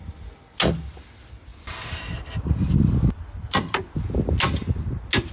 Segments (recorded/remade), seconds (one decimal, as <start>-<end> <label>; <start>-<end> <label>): 0.0-1.5 recorded; 1.5-3.9 remade; 3.9-5.3 recorded